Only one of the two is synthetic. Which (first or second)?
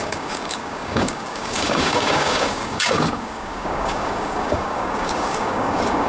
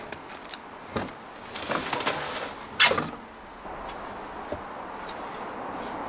first